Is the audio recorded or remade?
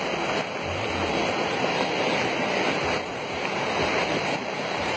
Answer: recorded